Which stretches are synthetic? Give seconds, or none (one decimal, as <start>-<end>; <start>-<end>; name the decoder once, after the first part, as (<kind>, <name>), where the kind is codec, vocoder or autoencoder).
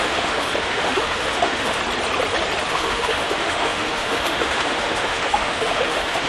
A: 0.0-1.8 (autoencoder, DAC-VAE); 2.7-6.3